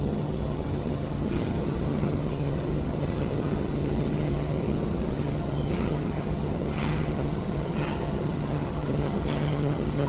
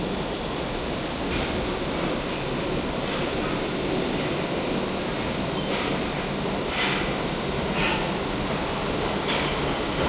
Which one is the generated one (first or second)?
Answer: first